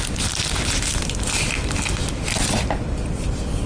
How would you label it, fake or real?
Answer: real